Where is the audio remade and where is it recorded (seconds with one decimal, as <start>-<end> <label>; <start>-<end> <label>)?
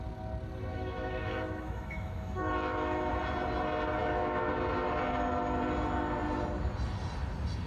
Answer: 0.0-0.7 recorded; 0.7-3.1 remade; 3.1-4.0 recorded; 4.0-4.5 remade; 4.5-7.7 recorded